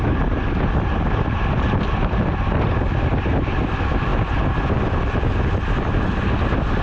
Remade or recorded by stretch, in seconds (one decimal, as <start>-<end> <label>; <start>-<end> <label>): 0.0-6.8 recorded